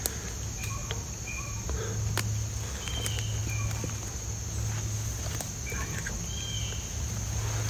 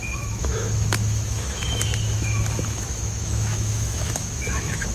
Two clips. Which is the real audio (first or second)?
first